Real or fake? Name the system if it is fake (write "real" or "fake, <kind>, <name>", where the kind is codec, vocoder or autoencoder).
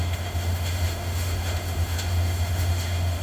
fake, autoencoder, DAC-VAE